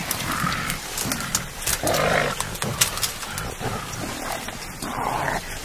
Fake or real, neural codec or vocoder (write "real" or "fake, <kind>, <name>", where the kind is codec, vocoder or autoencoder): real